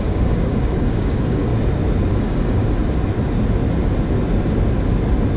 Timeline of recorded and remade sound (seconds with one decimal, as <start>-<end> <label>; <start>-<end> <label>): 0.0-1.5 remade; 1.5-2.2 recorded; 2.2-2.6 remade; 2.6-5.4 recorded